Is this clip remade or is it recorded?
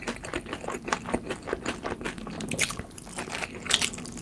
recorded